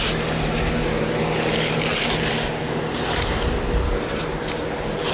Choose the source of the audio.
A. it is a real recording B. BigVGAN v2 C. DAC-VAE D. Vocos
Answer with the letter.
A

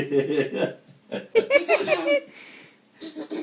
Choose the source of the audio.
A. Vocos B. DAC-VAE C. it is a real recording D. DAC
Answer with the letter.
C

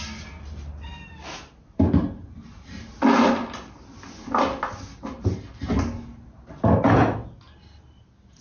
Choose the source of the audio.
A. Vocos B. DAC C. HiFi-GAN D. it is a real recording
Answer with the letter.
D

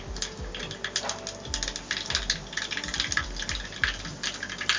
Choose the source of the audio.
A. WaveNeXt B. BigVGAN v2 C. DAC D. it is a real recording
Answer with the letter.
D